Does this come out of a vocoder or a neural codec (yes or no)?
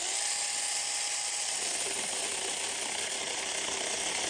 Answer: no